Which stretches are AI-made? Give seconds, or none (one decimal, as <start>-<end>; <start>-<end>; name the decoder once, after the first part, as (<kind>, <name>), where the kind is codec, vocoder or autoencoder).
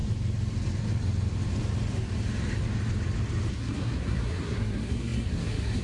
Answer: 3.5-5.8 (codec, SNAC)